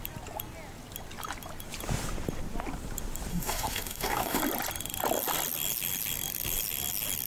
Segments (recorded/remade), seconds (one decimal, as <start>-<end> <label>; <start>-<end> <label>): 0.0-3.3 recorded; 3.3-4.4 remade; 4.4-7.3 recorded